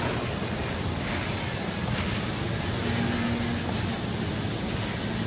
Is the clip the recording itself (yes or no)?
yes